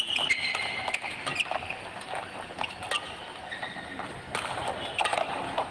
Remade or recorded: recorded